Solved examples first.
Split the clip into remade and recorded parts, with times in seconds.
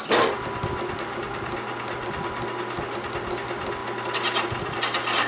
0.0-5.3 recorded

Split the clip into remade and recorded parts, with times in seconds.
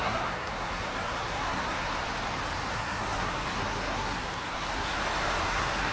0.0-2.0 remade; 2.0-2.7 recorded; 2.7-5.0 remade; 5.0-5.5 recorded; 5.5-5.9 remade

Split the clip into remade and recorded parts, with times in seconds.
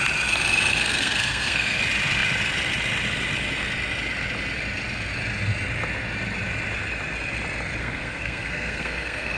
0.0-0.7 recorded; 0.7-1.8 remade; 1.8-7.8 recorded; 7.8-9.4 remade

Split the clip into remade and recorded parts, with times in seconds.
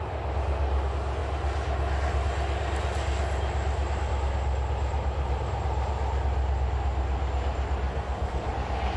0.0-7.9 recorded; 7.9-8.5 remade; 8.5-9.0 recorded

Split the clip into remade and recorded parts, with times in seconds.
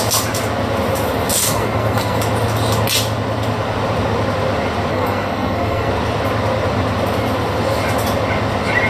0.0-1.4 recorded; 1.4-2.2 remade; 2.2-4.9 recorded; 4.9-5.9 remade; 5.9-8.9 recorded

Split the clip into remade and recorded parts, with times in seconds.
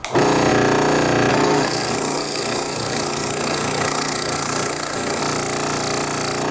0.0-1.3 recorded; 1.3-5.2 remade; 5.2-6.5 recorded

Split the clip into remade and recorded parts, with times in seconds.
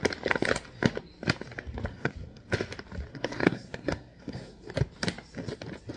0.0-1.9 recorded; 1.9-2.5 remade; 2.5-3.1 recorded; 3.1-4.7 remade; 4.7-6.0 recorded